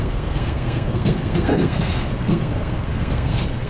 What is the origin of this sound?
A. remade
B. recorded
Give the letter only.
A